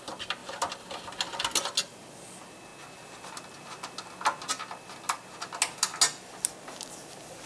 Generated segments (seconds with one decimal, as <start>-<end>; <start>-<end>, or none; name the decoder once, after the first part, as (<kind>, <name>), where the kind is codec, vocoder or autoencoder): none